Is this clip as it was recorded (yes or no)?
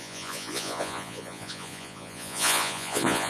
no